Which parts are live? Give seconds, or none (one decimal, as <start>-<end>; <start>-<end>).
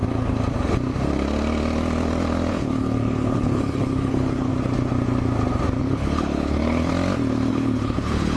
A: 0.0-2.5; 4.5-5.8; 6.9-7.5